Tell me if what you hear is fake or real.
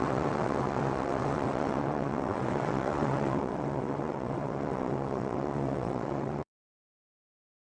fake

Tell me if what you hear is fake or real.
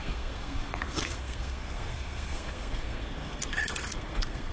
fake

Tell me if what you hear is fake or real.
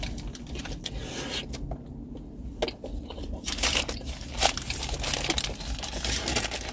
real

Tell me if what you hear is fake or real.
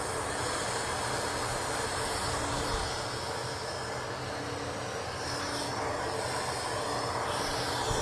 real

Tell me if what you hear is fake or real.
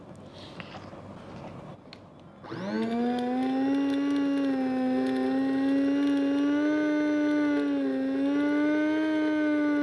real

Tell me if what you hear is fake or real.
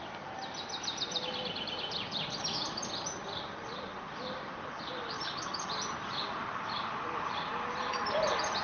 real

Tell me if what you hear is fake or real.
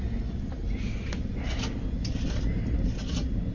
real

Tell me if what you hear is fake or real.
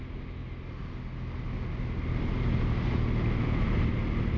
real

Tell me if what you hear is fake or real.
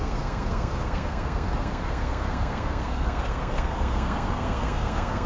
fake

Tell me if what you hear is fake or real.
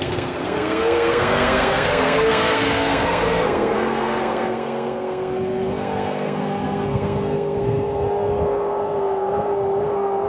fake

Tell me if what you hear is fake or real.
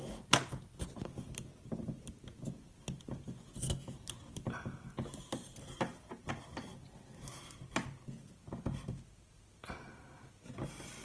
real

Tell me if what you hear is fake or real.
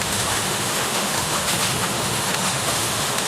fake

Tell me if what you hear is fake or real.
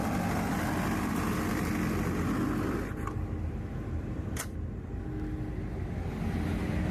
real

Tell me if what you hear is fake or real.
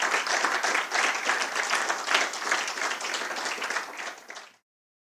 real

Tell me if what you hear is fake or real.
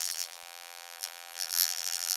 fake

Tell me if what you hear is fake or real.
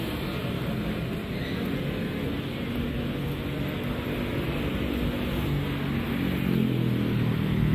real